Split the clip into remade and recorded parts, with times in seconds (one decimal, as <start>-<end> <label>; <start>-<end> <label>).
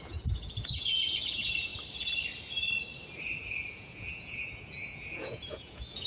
0.0-1.7 remade; 1.7-3.7 recorded; 3.7-6.1 remade